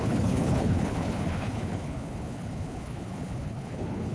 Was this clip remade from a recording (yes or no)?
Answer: yes